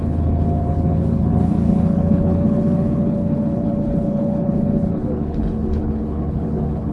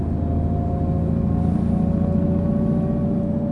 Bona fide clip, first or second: second